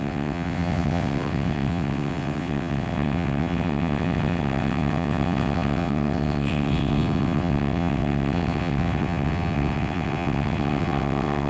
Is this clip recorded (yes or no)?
no